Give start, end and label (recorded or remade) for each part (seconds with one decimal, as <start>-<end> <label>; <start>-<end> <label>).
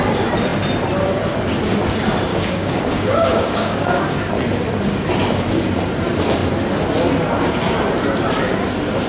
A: 0.0-2.3 recorded; 2.3-4.3 remade; 4.3-9.1 recorded